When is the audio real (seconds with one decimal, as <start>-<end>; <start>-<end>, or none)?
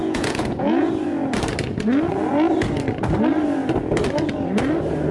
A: 0.9-5.1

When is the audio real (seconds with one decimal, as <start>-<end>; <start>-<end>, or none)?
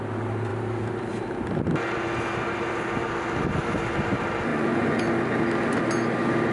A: 0.0-4.5; 5.0-6.5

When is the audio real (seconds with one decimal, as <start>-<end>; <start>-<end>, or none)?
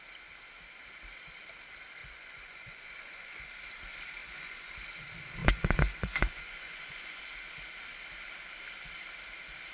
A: 0.0-2.0; 3.5-4.2; 4.7-5.4; 7.2-9.7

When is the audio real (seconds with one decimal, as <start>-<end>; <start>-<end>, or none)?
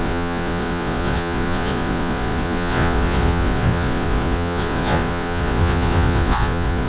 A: none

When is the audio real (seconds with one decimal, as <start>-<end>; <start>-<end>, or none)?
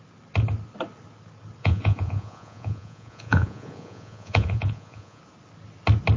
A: 0.0-1.6; 5.2-6.2